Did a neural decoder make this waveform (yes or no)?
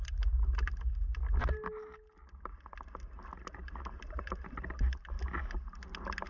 no